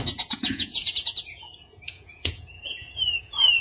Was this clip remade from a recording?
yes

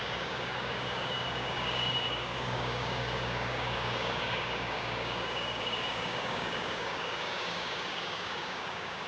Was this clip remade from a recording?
yes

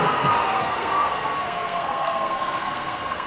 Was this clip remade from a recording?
yes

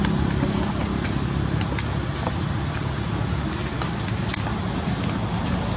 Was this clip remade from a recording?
no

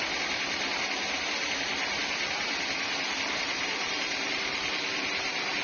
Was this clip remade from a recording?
no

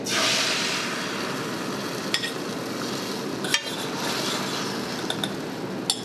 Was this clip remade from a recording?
no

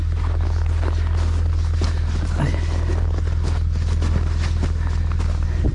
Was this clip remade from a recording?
no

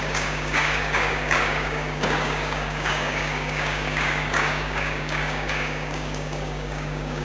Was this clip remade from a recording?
yes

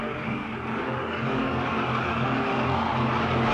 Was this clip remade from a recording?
yes